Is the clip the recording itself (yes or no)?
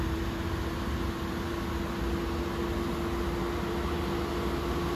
yes